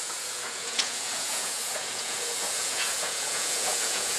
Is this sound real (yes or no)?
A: no